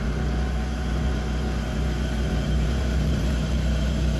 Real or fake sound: fake